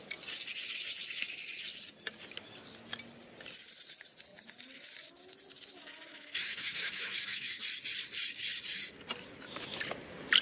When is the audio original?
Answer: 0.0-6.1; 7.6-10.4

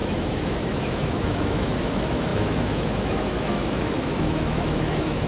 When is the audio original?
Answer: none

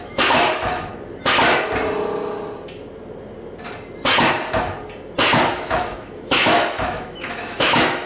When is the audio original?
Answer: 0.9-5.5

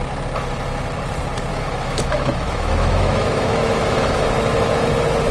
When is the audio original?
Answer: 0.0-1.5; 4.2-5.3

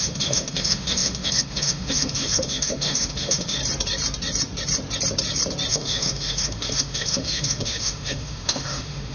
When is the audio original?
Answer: 3.6-5.7